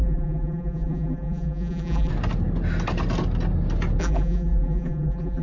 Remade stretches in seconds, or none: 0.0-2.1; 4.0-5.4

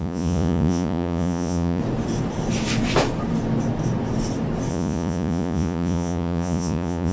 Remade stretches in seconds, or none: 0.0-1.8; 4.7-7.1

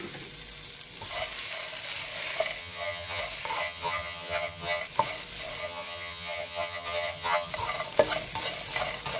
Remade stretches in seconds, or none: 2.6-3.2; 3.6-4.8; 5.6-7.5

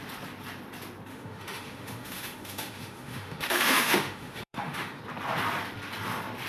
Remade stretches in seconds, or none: 1.1-5.0

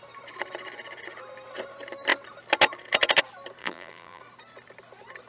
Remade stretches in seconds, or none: 3.6-4.2